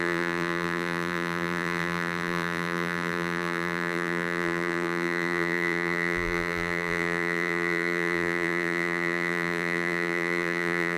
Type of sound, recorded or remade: remade